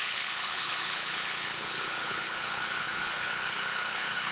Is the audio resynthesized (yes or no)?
yes